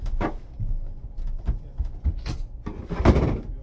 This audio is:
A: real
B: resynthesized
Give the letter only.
A